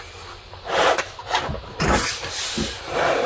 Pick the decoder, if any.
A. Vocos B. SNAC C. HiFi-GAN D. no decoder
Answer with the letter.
D